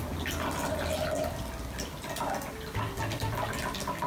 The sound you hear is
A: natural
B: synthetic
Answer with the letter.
A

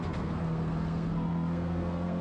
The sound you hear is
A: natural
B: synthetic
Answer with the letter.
B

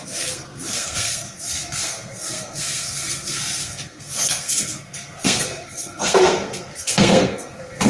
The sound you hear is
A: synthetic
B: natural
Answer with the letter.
A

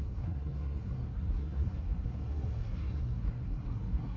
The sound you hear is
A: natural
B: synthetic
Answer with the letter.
B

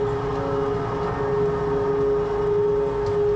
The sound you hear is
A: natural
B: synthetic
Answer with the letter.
A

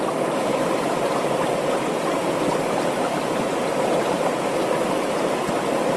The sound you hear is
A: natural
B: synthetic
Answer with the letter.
A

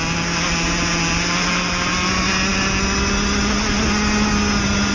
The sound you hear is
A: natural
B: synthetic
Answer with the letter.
A